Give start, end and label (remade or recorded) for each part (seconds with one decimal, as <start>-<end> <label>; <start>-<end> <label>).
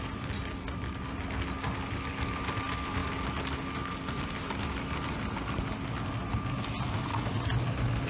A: 0.0-8.1 recorded